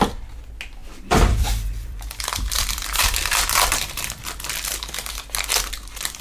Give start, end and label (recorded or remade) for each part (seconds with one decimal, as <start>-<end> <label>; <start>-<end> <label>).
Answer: 0.0-0.8 recorded; 0.8-4.5 remade; 4.5-6.2 recorded